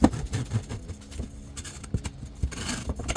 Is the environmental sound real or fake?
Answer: real